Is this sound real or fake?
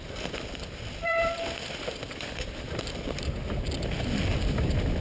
real